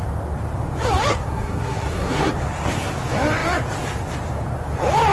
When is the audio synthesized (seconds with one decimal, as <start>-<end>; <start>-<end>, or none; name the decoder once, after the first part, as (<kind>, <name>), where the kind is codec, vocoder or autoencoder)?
1.1-2.3 (codec, SNAC)